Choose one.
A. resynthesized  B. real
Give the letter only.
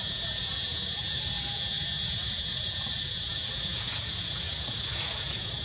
A